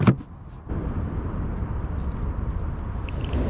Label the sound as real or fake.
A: real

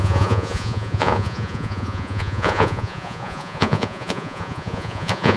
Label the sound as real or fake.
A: fake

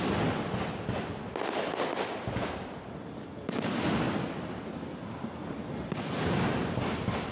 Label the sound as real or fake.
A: real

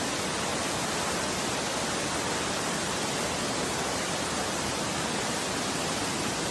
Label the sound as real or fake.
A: real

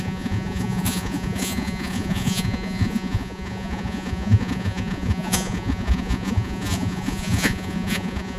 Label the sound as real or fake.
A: fake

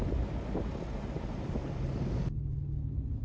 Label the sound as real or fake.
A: real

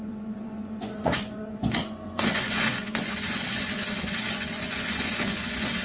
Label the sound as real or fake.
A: fake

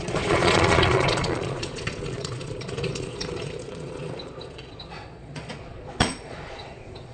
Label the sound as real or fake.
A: fake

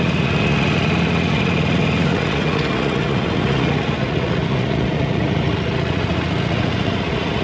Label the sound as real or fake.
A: fake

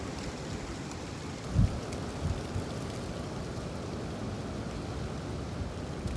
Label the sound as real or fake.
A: real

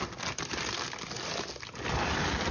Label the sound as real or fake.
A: real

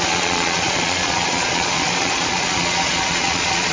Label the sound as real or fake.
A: fake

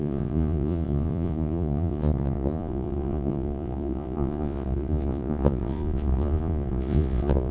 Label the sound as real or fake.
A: fake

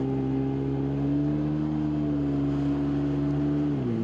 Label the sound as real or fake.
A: real